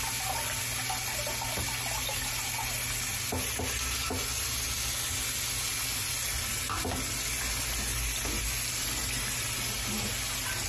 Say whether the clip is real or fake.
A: real